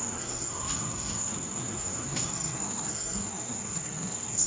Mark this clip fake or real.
fake